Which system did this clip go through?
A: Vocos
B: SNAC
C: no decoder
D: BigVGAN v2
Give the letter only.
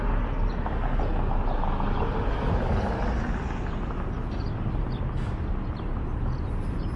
C